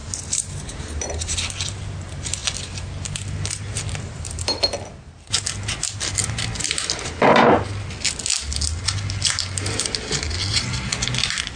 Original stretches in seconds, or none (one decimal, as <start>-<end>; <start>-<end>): 1.5-11.6